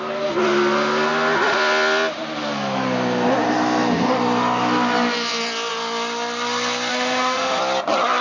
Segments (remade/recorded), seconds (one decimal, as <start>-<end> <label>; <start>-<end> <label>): 0.0-6.9 recorded; 6.9-7.6 remade; 7.6-8.2 recorded

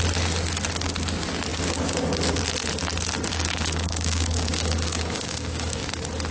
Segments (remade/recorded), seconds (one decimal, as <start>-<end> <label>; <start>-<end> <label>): 0.0-3.3 recorded; 3.3-5.8 remade; 5.8-6.3 recorded

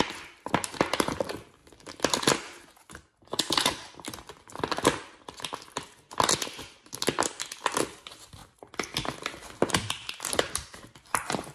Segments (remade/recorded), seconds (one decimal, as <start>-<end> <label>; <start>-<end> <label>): 0.0-11.5 recorded

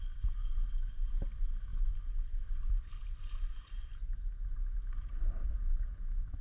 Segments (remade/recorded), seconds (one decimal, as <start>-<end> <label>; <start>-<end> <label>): 0.0-6.4 recorded

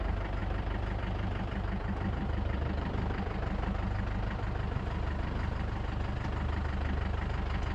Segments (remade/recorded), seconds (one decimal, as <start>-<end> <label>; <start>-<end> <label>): 0.0-0.4 recorded; 0.4-4.8 remade; 4.8-7.7 recorded